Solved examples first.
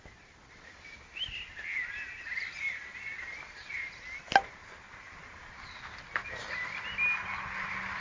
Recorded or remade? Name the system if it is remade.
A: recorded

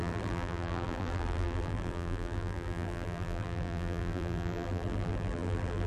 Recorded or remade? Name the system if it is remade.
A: remade, vocoder, BigVGAN v2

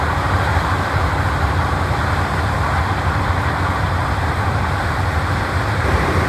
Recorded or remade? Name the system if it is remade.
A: remade, vocoder, BigVGAN v2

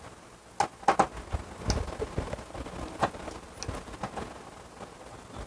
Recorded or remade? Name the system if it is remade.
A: recorded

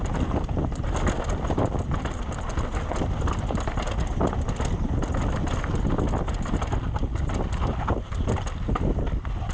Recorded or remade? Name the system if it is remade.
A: recorded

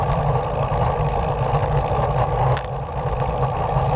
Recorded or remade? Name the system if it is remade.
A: remade, vocoder, BigVGAN v2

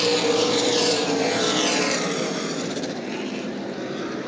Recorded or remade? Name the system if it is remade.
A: remade, vocoder, BigVGAN v2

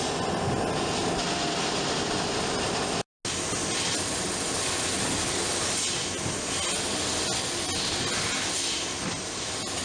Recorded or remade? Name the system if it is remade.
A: recorded